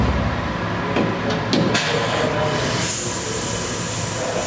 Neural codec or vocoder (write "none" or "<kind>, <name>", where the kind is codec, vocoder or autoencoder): none